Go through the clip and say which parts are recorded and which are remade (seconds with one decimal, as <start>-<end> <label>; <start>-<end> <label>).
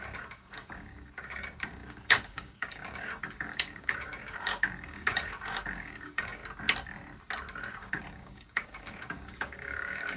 0.0-6.4 remade; 6.4-7.7 recorded; 7.7-10.2 remade